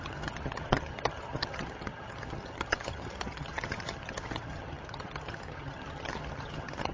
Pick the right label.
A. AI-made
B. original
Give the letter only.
A